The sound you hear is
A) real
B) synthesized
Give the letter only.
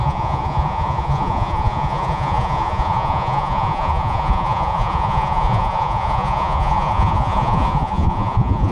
B